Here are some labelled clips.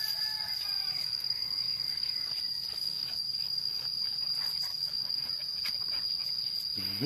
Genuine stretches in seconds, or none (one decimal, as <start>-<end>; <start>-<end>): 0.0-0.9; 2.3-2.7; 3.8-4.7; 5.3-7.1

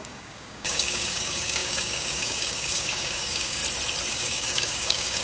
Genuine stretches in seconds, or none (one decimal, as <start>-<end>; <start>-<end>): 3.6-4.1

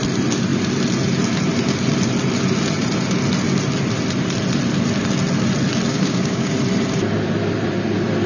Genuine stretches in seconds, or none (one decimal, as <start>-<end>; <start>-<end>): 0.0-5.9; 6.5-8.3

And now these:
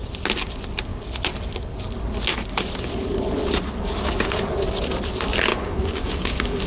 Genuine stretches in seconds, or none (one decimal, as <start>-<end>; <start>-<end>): 0.0-5.5